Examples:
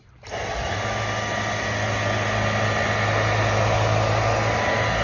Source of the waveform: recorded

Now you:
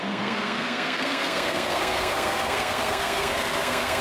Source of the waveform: remade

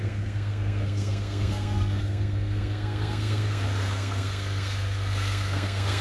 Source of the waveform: remade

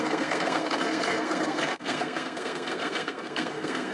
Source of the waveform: remade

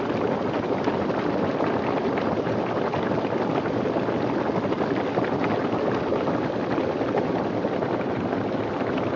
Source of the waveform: recorded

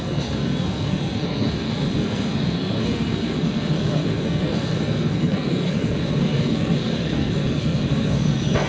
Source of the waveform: remade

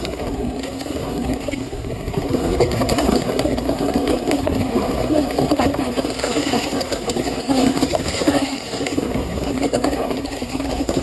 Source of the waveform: remade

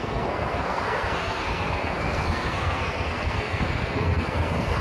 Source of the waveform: remade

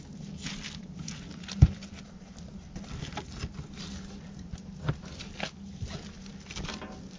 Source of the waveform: recorded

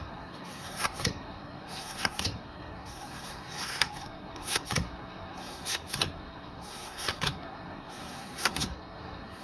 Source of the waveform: remade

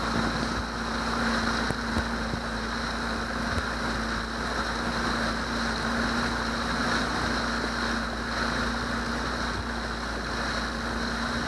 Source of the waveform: recorded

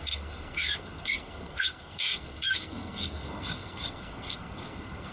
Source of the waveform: remade